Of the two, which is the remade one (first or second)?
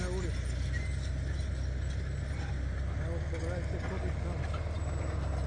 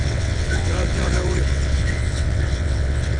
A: second